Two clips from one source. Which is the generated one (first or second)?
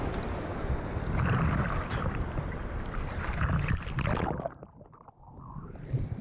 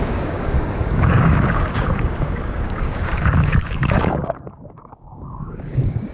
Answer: second